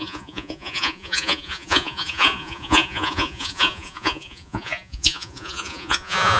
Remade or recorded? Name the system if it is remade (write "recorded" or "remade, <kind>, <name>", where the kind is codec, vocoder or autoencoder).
remade, vocoder, Vocos